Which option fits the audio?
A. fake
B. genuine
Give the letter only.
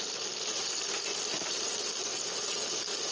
B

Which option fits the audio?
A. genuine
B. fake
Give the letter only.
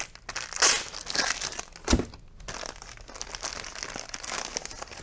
A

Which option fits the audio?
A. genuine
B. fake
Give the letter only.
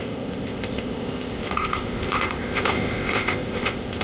B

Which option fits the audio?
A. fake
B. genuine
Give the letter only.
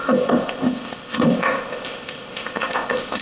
A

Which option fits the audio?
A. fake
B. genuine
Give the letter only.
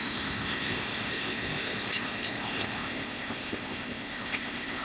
A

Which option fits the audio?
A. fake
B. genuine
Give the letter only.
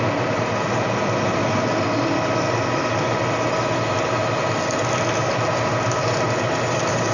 B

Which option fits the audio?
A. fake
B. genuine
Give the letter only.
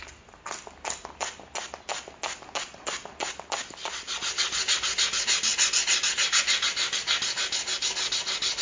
B